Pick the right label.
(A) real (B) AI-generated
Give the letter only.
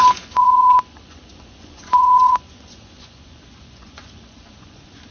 B